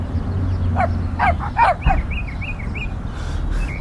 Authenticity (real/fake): real